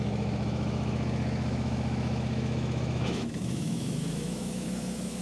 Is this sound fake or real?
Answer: fake